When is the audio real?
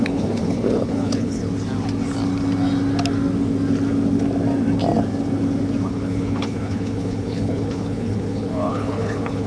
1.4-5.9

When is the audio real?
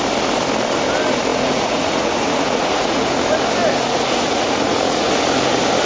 0.0-1.3; 3.2-3.6; 5.1-5.8